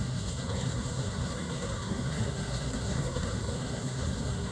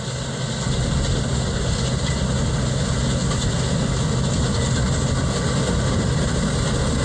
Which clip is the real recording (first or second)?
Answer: second